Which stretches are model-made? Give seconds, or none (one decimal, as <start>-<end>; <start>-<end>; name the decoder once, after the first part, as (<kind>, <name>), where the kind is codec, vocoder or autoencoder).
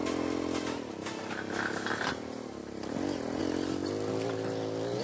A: none